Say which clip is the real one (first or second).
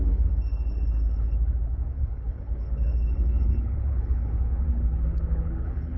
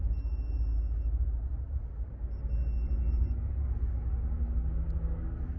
second